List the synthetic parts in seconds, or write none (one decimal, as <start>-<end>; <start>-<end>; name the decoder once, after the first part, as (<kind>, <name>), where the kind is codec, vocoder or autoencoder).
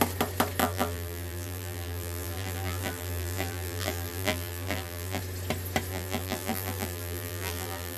0.6-5.2 (vocoder, BigVGAN v2); 5.9-8.0